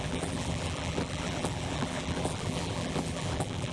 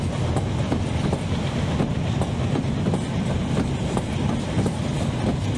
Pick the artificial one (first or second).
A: first